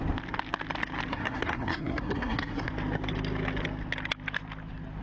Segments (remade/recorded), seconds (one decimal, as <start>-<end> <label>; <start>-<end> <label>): 0.0-1.1 recorded; 1.1-2.7 remade; 2.7-5.0 recorded